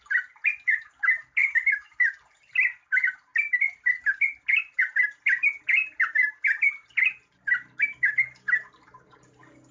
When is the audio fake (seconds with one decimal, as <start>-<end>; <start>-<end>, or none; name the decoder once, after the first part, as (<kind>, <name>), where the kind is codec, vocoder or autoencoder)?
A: 1.4-1.9 (autoencoder, DAC-VAE)